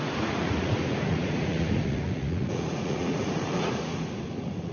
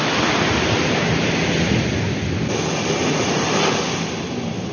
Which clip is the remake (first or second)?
first